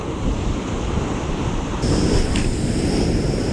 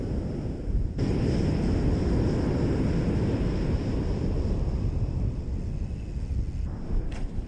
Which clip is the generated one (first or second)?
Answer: first